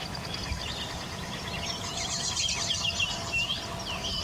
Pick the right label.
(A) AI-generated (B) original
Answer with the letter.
B